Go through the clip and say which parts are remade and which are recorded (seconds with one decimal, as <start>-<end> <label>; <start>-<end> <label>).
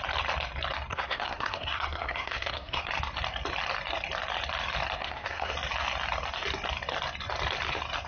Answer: 0.0-0.9 recorded; 0.9-2.9 remade; 2.9-5.0 recorded; 5.0-5.5 remade; 5.5-8.1 recorded